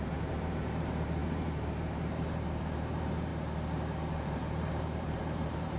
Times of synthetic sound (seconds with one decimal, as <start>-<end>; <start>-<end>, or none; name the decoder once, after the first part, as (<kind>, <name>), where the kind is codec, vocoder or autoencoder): 0.0-3.3 (vocoder, BigVGAN v2); 4.1-5.8